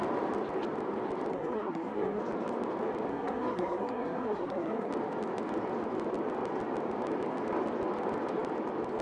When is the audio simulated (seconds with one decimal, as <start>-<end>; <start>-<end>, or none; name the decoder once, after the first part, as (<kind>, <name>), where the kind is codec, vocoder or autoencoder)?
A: 1.3-2.2 (codec, SNAC); 3.1-4.9